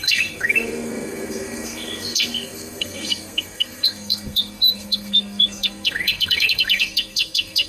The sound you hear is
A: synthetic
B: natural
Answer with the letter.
A